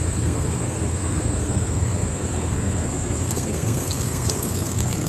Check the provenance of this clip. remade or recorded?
remade